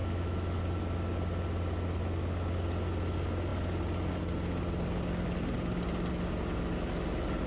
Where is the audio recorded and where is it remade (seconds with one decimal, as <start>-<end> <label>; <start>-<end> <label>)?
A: 0.0-0.6 remade; 0.6-7.5 recorded